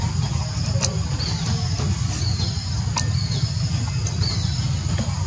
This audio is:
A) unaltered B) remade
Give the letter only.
A